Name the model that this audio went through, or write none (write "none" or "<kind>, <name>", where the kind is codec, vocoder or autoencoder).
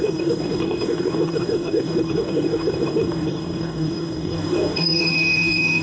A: codec, DAC